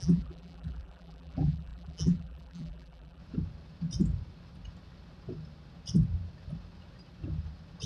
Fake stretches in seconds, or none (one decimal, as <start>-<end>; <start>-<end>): 0.0-3.2